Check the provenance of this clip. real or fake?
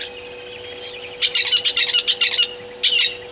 real